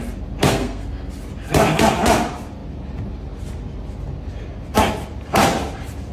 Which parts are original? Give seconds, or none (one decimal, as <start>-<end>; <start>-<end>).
0.0-0.5; 1.1-6.1